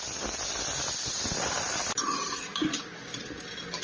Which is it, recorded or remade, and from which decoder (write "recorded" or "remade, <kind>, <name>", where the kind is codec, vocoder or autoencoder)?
recorded